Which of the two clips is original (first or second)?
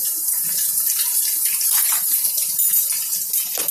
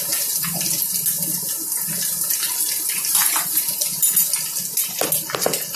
second